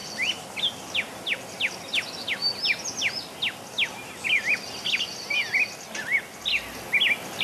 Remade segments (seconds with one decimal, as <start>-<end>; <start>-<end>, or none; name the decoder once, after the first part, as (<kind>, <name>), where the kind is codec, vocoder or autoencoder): 0.0-0.7 (vocoder, BigVGAN v2)